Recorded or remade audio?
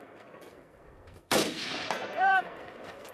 remade